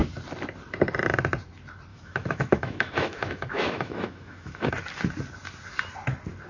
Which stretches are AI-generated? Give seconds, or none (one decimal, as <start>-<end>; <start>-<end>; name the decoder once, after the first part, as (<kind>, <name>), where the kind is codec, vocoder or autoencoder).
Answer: 1.9-4.7 (autoencoder, DAC-VAE)